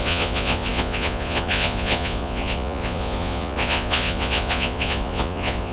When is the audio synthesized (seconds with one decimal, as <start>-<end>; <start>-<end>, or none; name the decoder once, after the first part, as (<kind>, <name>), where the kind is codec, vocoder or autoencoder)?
0.0-5.7 (vocoder, Vocos)